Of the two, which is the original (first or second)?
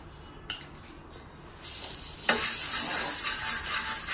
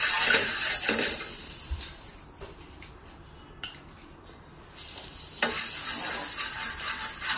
first